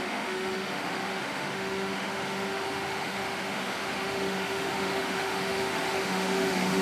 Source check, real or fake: fake